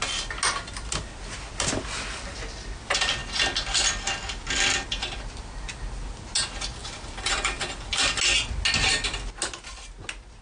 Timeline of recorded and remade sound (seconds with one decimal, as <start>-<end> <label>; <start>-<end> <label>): 0.0-10.4 recorded